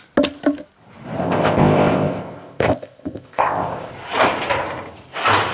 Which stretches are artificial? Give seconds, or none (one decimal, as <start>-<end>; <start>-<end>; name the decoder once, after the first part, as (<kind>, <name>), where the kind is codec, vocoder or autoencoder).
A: 1.2-3.9 (codec, ZipCodec)